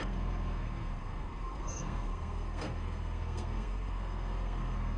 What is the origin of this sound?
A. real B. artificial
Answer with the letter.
B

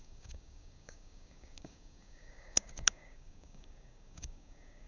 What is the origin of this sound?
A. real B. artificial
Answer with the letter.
B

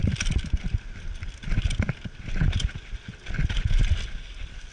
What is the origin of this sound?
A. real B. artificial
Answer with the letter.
A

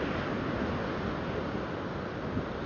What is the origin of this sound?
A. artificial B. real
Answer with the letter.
B